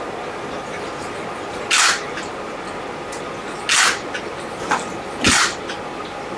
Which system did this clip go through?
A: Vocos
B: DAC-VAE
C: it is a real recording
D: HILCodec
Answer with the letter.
C